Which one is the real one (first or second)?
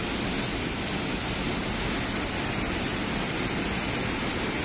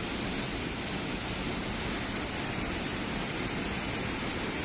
first